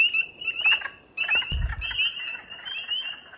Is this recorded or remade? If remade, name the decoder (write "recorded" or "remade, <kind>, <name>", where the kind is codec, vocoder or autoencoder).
recorded